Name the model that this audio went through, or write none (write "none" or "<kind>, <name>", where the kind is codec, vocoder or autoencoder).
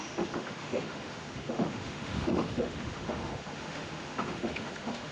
autoencoder, DAC-VAE